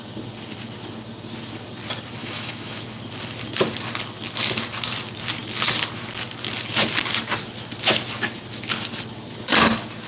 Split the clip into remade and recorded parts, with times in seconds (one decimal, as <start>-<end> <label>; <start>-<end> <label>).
0.0-2.2 recorded; 2.2-2.8 remade; 2.8-10.1 recorded